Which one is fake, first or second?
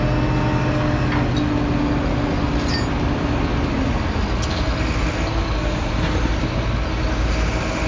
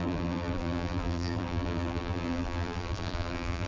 second